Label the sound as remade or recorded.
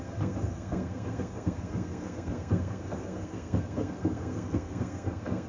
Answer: remade